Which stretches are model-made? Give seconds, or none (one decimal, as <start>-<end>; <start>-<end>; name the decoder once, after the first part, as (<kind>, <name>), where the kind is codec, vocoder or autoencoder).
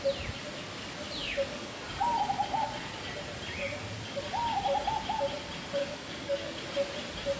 1.2-2.0 (codec, DAC); 3.6-4.2; 5.8-6.6